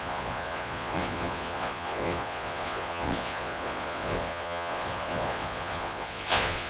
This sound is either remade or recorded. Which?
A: remade